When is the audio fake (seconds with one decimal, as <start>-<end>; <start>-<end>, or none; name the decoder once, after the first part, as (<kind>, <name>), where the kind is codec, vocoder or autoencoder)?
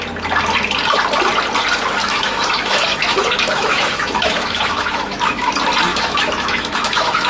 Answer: 2.0-5.5 (autoencoder, DAC-VAE); 5.9-7.3